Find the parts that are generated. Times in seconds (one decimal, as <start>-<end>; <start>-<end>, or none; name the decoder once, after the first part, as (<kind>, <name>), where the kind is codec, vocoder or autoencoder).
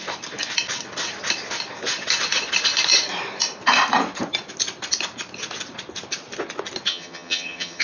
6.9-7.8 (vocoder, HiFi-GAN)